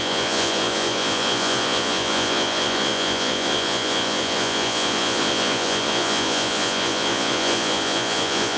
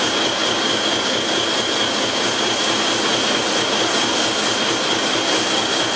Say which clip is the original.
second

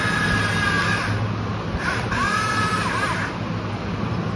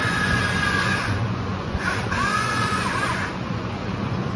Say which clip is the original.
first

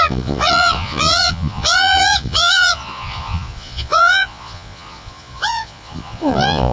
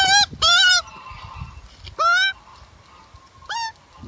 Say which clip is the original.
second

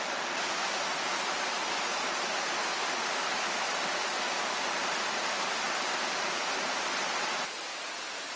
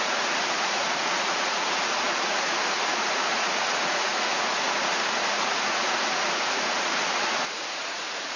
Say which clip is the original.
first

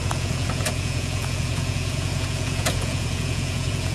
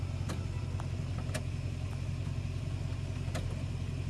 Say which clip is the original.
second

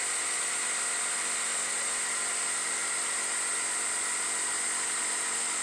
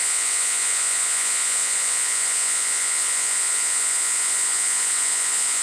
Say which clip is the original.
first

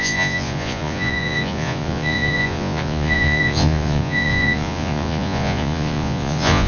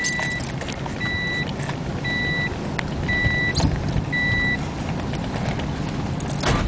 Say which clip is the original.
second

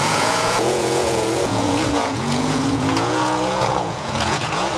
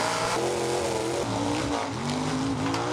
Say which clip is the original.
second